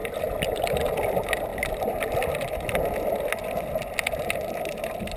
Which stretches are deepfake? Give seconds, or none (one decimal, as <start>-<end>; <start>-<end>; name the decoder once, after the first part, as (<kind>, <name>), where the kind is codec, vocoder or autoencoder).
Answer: none